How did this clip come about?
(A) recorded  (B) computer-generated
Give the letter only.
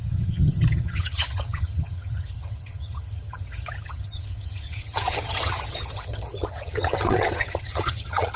B